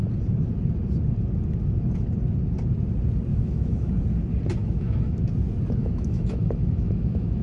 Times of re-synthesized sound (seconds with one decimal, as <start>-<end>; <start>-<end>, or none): 3.3-3.9; 4.6-5.2; 5.8-7.4